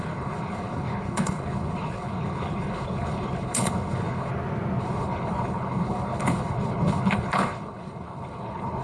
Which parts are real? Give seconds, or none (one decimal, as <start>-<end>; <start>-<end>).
4.3-4.8